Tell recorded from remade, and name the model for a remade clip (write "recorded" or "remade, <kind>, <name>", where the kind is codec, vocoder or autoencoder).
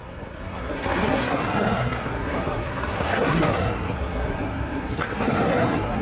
remade, codec, SNAC